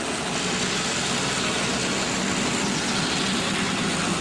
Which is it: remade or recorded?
recorded